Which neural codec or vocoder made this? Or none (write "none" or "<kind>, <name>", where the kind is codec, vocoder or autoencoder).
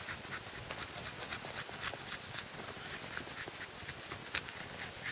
none